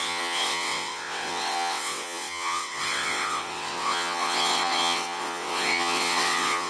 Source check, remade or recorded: remade